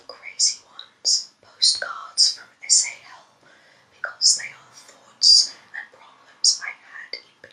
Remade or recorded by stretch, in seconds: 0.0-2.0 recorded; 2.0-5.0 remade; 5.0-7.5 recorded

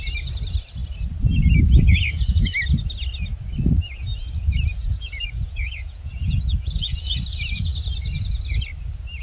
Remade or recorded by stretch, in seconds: 0.0-4.8 recorded; 4.8-7.1 remade; 7.1-9.2 recorded

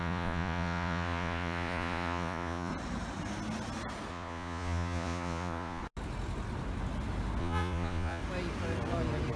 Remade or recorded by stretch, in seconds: 0.0-2.7 remade; 2.7-4.1 recorded; 4.1-5.8 remade; 5.8-7.4 recorded; 7.4-8.2 remade; 8.2-9.4 recorded